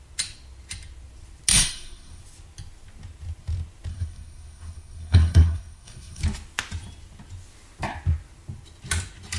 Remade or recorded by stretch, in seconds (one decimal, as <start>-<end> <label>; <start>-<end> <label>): 0.0-1.5 recorded; 1.5-2.2 remade; 2.2-3.9 recorded; 3.9-6.2 remade; 6.2-9.4 recorded